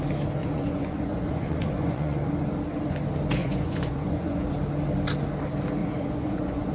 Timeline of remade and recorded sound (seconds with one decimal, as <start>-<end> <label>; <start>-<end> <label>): 0.0-0.4 recorded; 0.4-2.3 remade; 2.3-3.4 recorded; 3.4-4.4 remade; 4.4-5.8 recorded; 5.8-6.7 remade